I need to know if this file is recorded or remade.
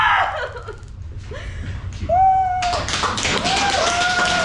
recorded